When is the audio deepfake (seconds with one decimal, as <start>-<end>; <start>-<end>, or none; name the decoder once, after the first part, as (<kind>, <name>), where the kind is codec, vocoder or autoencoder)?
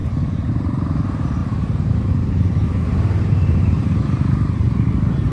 0.0-5.3 (vocoder, BigVGAN v2)